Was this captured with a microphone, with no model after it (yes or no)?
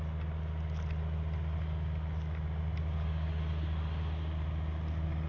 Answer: yes